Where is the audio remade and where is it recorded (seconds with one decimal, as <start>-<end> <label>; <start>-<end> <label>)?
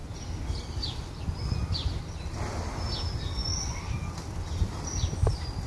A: 0.0-5.7 recorded